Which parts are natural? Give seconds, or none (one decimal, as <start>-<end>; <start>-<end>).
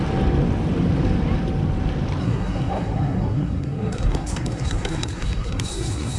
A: 0.0-2.2